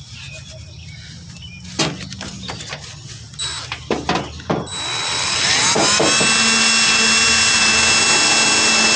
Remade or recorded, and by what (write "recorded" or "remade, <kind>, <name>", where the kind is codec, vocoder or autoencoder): recorded